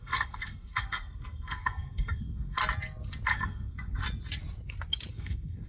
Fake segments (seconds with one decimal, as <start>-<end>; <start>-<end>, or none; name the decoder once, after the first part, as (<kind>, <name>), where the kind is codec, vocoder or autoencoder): 0.0-2.6 (codec, SNAC); 3.3-4.0; 5.1-5.7